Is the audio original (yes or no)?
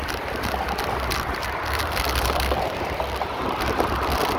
yes